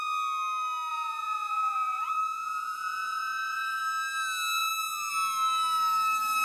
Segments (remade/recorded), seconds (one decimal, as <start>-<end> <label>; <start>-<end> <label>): 0.0-0.9 recorded; 0.9-3.8 remade; 3.8-6.4 recorded